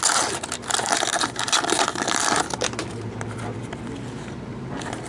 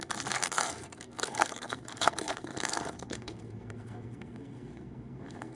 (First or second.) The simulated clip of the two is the second